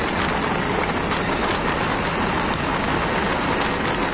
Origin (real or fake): real